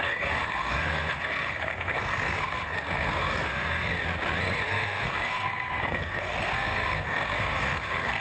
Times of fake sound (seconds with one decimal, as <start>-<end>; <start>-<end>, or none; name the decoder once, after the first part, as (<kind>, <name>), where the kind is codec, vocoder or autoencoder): 0.0-3.9 (codec, SNAC); 4.7-8.2

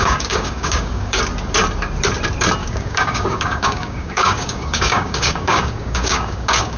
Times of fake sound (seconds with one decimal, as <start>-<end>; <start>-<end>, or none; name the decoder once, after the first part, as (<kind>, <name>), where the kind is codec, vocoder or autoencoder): 0.0-1.2 (codec, DAC); 2.6-6.8